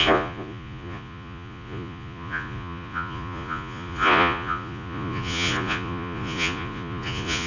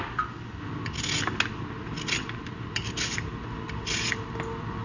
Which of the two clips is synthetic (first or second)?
first